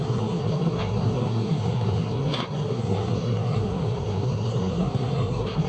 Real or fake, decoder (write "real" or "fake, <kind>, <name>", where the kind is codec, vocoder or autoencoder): fake, codec, SNAC